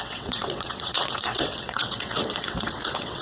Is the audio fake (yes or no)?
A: yes